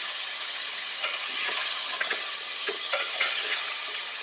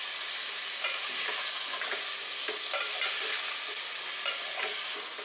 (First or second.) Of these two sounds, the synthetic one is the first